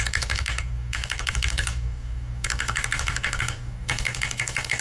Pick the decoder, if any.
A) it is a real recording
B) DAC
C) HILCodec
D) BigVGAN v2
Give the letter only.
B